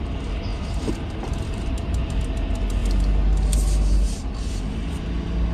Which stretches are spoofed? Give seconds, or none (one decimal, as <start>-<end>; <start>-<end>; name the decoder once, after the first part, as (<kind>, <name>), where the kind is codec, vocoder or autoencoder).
0.5-2.2 (vocoder, BigVGAN v2)